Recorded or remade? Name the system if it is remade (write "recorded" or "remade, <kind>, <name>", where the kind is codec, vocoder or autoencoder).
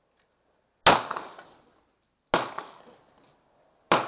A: recorded